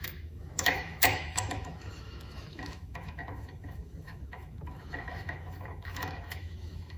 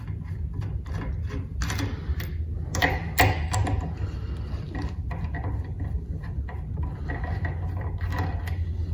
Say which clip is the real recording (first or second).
second